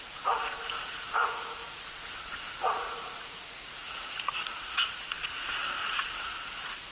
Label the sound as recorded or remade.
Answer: remade